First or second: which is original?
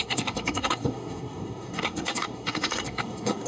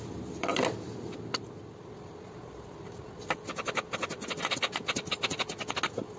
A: second